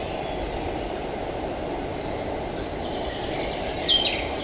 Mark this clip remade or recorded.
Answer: recorded